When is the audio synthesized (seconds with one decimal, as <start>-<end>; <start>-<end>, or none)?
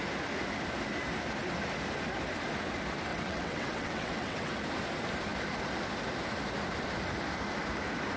3.1-4.5